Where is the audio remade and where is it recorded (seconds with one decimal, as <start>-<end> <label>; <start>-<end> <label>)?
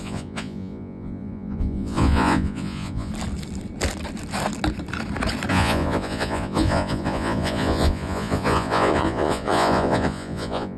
0.0-3.1 remade; 3.1-5.5 recorded; 5.5-10.8 remade